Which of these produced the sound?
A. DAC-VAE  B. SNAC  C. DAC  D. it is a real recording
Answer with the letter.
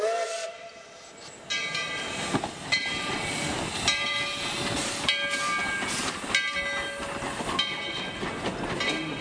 D